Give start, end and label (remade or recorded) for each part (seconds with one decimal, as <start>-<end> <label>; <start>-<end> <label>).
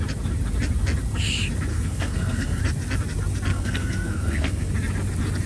0.0-1.7 recorded; 1.7-2.6 remade; 2.6-3.5 recorded; 3.5-4.7 remade; 4.7-5.5 recorded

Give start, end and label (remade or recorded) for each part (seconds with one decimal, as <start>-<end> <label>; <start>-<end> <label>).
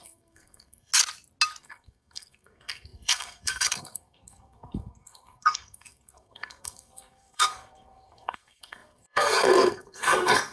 0.0-0.9 remade; 0.9-1.6 recorded; 1.6-10.5 remade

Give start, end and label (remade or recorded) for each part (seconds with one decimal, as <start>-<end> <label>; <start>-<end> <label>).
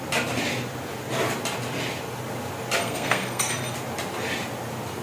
0.0-2.8 recorded; 2.8-3.5 remade; 3.5-5.0 recorded